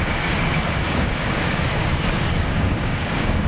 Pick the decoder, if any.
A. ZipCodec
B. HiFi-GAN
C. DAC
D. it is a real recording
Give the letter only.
C